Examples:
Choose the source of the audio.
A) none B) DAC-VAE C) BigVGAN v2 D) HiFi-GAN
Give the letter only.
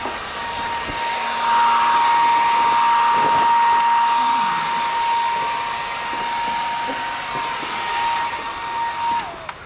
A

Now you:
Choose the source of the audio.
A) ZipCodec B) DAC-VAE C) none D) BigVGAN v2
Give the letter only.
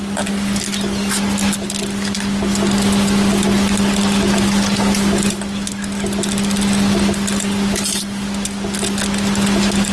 C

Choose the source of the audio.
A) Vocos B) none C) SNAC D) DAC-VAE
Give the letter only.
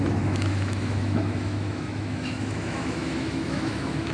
D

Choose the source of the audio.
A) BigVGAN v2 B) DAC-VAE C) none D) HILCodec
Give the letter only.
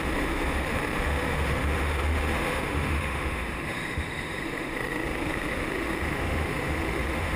B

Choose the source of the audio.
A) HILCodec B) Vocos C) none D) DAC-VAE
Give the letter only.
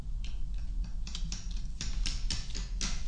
C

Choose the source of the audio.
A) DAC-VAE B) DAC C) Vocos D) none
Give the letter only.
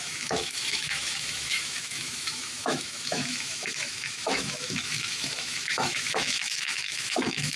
A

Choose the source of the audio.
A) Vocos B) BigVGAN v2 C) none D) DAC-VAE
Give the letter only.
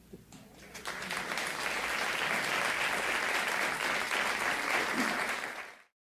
C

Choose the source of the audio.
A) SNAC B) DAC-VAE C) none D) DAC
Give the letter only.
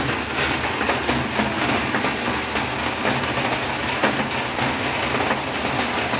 C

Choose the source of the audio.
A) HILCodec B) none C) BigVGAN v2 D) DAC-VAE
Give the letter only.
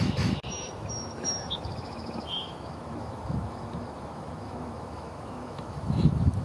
D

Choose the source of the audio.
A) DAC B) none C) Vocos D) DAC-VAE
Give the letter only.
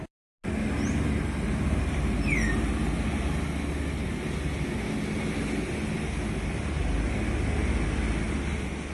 B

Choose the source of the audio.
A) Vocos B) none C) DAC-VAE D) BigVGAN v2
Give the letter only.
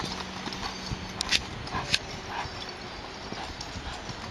B